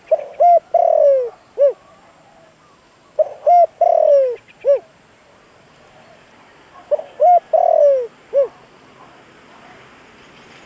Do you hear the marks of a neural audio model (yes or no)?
no